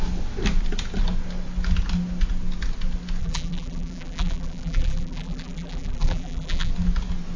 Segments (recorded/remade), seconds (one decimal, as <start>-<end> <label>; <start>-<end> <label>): 0.0-3.2 recorded; 3.2-6.7 remade; 6.7-7.4 recorded